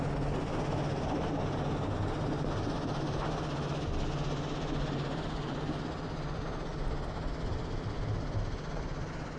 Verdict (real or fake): real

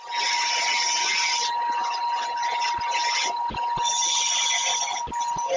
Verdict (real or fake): real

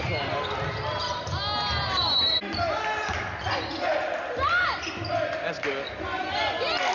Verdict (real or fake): real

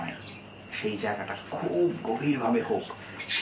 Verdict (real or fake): real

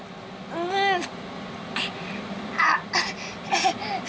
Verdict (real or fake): real